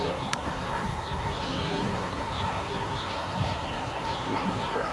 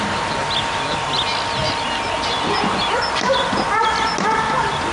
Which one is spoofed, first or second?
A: first